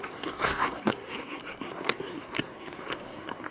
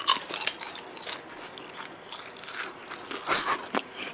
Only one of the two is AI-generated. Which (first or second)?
first